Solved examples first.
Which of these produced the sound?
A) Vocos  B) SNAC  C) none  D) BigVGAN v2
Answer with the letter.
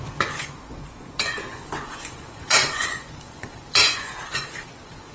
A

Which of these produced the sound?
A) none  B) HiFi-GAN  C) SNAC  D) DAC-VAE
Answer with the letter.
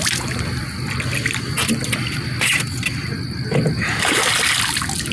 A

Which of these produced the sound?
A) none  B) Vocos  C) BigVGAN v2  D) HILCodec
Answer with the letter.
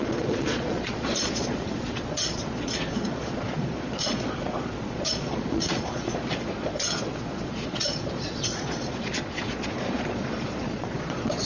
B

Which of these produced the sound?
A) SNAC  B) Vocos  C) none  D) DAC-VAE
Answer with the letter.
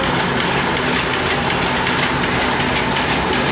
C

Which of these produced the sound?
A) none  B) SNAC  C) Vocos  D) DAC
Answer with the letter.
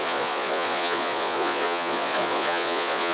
C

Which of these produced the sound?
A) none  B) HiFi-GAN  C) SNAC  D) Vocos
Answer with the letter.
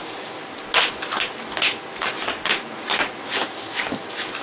A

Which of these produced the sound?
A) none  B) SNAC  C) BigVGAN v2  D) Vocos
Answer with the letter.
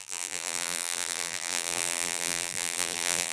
C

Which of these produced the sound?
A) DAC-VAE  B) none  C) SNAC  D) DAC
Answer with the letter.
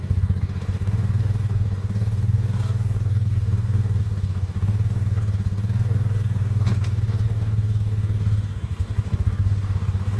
D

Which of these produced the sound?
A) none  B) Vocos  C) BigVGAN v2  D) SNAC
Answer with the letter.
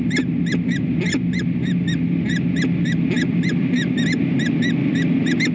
A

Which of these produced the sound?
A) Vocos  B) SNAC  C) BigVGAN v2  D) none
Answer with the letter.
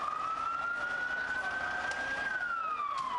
D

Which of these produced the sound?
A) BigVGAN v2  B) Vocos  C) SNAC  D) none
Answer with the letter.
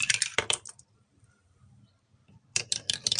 A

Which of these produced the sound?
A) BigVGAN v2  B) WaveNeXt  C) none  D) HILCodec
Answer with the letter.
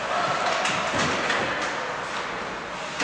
C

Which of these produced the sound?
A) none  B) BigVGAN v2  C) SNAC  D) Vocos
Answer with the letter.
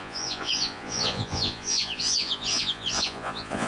D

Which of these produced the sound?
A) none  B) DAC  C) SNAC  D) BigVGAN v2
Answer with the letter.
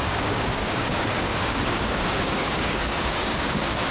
B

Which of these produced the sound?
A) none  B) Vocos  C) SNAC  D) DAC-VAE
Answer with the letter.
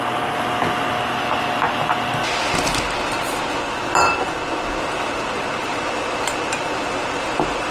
A